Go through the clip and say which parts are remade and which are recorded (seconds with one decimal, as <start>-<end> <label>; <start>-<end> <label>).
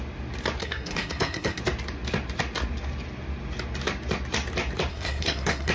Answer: 0.0-0.6 recorded; 0.6-1.6 remade; 1.6-4.9 recorded; 4.9-5.7 remade